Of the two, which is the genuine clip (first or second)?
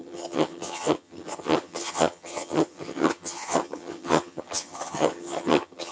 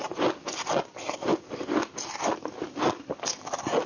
second